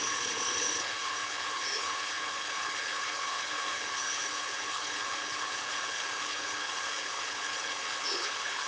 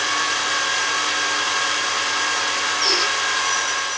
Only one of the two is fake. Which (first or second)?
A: first